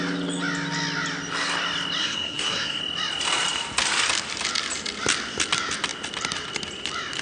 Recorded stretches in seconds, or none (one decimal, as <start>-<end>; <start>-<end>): 0.0-2.0; 2.8-7.2